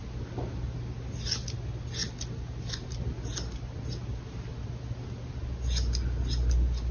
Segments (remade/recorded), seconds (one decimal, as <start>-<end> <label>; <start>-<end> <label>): 0.0-6.9 recorded